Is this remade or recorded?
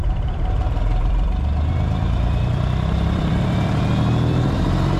remade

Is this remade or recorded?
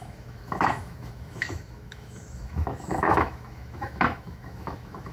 remade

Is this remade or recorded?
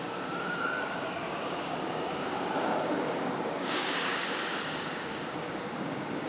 remade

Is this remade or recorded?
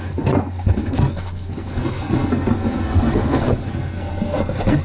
remade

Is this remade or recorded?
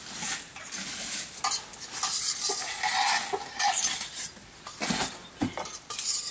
recorded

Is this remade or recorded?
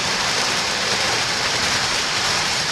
remade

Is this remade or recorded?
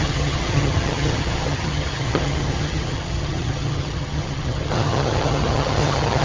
remade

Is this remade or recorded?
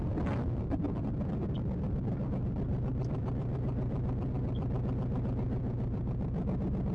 remade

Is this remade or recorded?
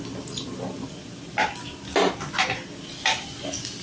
recorded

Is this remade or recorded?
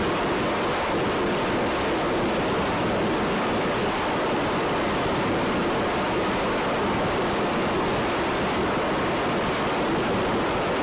recorded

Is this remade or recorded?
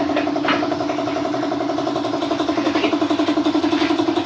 recorded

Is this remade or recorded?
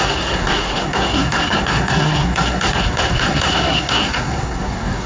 remade